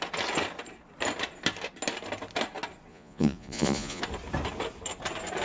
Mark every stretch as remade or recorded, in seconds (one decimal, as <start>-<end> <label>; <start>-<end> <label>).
0.0-2.9 recorded; 2.9-4.0 remade; 4.0-5.4 recorded